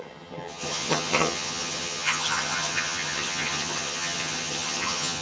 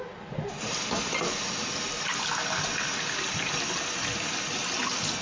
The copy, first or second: first